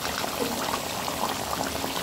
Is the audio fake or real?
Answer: real